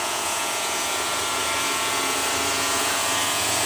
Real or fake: fake